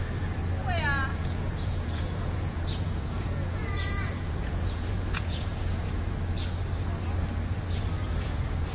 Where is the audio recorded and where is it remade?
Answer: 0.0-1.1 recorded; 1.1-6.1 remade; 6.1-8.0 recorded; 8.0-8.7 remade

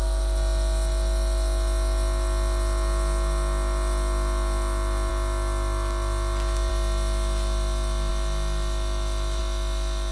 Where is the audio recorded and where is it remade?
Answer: 0.0-10.1 recorded